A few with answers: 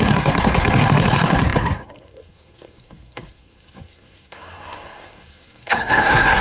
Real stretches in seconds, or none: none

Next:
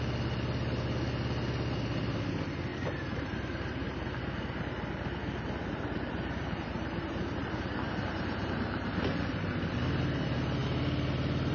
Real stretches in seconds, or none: 0.0-2.7; 4.0-5.6; 10.0-11.5

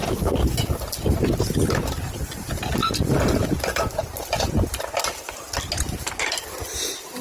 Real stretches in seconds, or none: 0.0-2.8; 3.4-4.0; 5.3-7.2

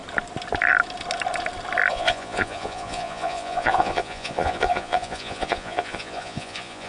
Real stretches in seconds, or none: 0.0-1.9

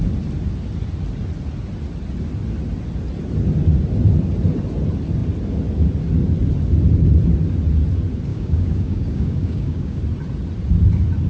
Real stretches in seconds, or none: 0.0-8.3; 10.0-11.3